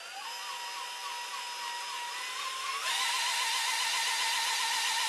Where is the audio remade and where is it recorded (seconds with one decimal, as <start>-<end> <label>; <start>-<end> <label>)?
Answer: 0.0-5.1 recorded